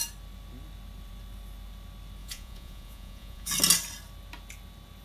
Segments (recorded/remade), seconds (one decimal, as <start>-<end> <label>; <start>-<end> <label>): 0.0-2.2 recorded; 2.2-3.5 remade; 3.5-5.0 recorded